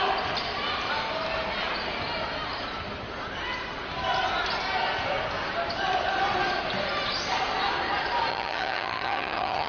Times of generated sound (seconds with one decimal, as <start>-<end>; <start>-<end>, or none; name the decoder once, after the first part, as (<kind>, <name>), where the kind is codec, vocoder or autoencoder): 8.3-9.7 (vocoder, HiFi-GAN)